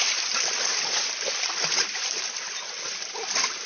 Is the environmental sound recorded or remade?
recorded